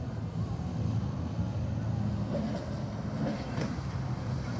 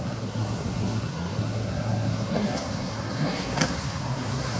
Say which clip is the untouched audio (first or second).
first